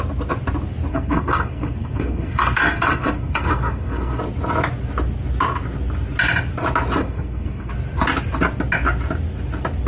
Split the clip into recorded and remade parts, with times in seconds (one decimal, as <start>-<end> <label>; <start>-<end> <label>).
0.0-0.9 recorded; 0.9-4.2 remade; 4.2-7.0 recorded; 7.0-7.7 remade; 7.7-9.9 recorded